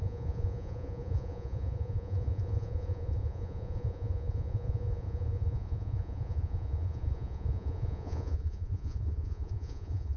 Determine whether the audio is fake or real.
fake